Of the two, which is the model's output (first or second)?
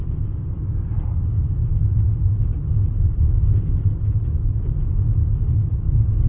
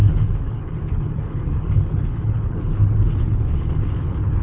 second